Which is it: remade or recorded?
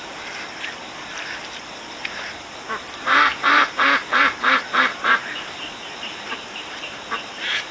remade